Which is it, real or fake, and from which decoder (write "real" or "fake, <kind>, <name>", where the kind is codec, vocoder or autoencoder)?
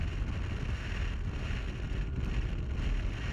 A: real